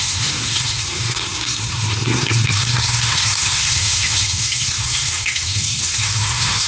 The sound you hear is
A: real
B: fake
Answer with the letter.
B